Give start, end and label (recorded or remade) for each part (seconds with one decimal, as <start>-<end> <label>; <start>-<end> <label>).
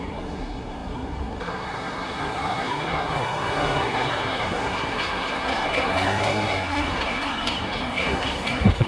0.0-8.9 remade